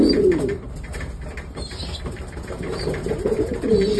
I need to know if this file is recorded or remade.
remade